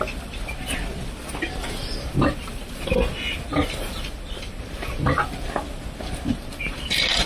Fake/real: fake